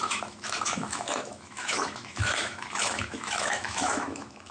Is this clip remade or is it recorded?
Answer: remade